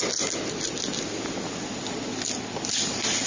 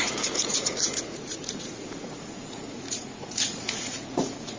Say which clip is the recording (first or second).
first